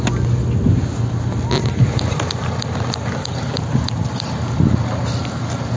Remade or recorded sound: recorded